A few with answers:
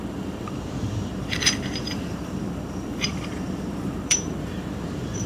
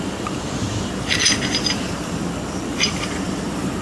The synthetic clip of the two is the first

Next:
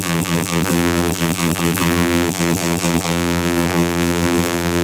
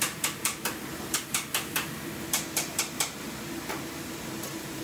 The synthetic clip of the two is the first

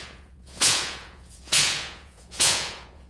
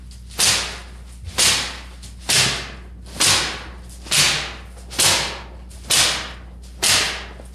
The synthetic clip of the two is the first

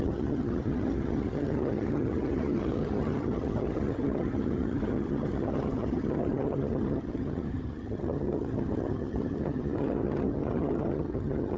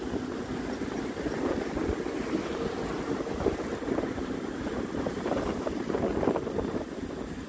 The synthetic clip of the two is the first